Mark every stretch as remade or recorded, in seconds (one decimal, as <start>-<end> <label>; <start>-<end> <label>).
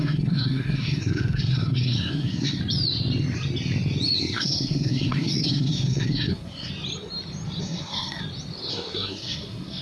0.0-2.6 remade; 2.6-4.2 recorded; 4.2-6.7 remade; 6.7-7.6 recorded; 7.6-8.2 remade; 8.2-8.7 recorded; 8.7-9.8 remade